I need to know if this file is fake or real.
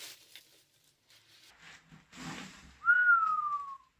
real